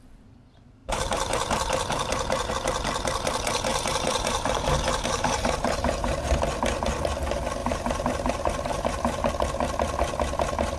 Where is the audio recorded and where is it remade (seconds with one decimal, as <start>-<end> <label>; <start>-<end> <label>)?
0.0-0.8 recorded; 0.8-2.5 remade; 2.5-3.7 recorded; 3.7-6.4 remade; 6.4-7.6 recorded; 7.6-9.3 remade; 9.3-10.8 recorded